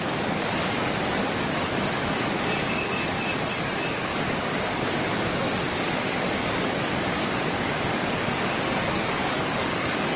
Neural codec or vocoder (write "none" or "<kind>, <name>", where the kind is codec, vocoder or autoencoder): codec, DAC